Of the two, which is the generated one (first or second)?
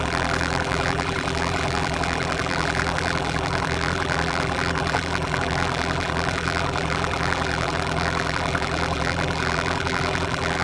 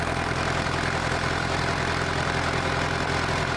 first